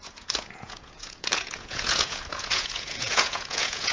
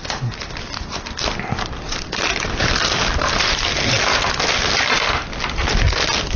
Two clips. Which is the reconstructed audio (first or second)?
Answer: first